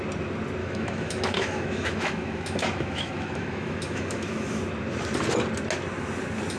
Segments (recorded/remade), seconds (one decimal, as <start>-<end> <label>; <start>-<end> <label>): 0.0-0.6 recorded; 0.6-4.6 remade; 4.6-6.6 recorded